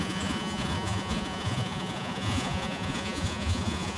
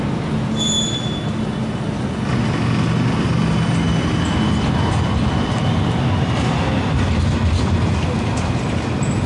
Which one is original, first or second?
second